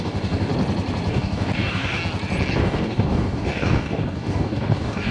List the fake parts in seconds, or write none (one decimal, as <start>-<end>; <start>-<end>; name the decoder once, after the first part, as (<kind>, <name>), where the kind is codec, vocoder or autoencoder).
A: 0.0-0.5 (codec, DAC); 1.1-2.0; 2.5-5.1